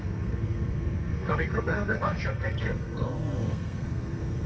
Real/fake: fake